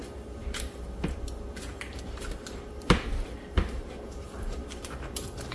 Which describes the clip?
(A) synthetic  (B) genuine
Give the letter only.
A